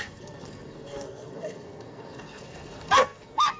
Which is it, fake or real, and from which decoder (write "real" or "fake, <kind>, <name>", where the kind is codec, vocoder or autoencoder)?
fake, codec, SNAC